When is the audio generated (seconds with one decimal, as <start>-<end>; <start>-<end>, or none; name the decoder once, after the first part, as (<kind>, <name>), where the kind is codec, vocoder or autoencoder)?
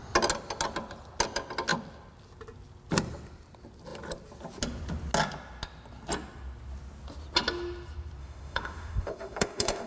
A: 8.2-9.9 (autoencoder, DAC-VAE)